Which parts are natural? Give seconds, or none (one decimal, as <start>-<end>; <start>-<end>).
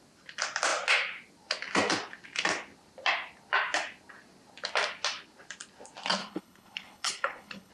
0.0-6.2